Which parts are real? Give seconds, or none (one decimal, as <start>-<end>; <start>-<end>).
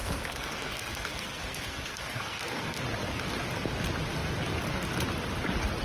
2.8-5.8